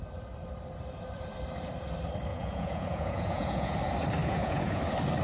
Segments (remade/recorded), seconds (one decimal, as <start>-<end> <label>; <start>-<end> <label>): 0.0-2.3 recorded; 2.3-3.8 remade; 3.8-4.2 recorded; 4.2-4.8 remade; 4.8-5.2 recorded